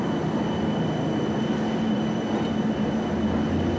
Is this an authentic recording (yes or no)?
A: yes